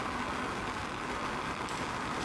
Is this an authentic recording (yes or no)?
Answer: yes